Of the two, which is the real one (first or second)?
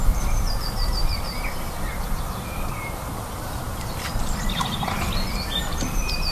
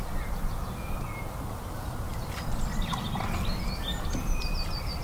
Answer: second